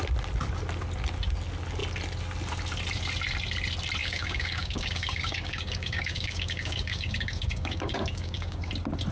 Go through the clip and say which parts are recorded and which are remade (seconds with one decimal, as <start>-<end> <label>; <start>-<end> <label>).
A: 0.0-4.0 recorded; 4.0-8.7 remade; 8.7-9.1 recorded